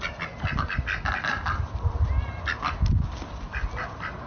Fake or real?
real